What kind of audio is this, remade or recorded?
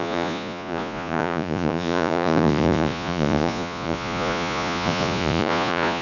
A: remade